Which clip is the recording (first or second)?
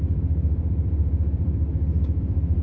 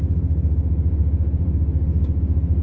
second